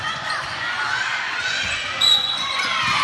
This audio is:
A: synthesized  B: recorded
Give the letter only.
A